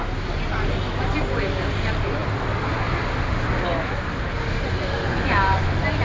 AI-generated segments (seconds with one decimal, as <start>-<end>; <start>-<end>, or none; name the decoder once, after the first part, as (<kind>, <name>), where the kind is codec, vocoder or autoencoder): none